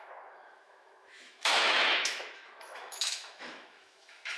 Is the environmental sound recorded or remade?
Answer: remade